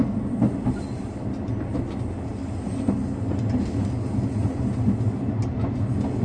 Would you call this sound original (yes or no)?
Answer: yes